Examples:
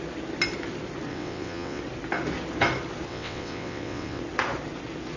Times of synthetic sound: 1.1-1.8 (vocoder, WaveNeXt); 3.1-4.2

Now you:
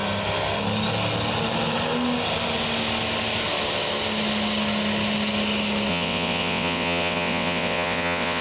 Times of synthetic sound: 5.9-8.4 (vocoder, WaveNeXt)

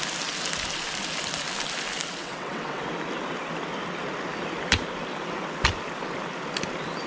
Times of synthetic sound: 2.2-2.8 (vocoder, WaveNeXt)

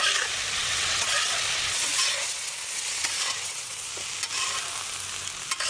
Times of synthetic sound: 0.6-3.9 (vocoder, WaveNeXt)

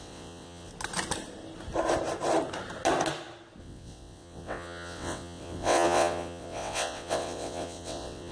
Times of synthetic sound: 0.0-0.7 (vocoder, WaveNeXt); 3.6-8.3